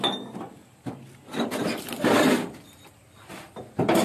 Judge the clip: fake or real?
real